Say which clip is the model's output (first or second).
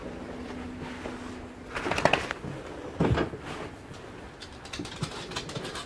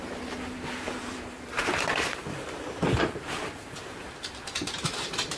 second